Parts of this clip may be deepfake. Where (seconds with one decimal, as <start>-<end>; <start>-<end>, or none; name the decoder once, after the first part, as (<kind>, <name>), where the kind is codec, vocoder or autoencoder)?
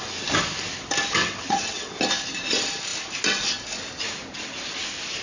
1.2-1.9 (vocoder, WaveNeXt)